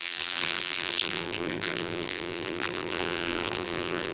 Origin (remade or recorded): remade